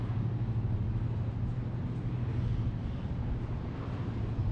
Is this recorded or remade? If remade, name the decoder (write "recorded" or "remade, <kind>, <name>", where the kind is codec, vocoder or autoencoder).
recorded